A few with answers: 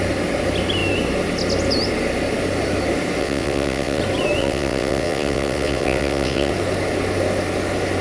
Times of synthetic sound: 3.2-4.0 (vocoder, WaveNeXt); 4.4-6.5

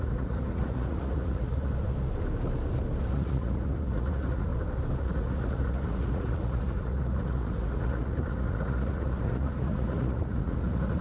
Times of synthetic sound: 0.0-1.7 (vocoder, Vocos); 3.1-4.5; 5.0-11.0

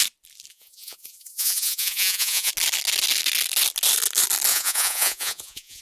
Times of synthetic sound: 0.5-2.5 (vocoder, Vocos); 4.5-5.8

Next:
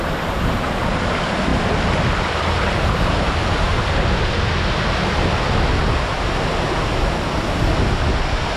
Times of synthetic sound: none